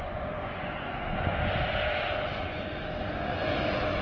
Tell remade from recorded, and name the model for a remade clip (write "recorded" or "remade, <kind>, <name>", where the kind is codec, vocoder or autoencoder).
remade, vocoder, Vocos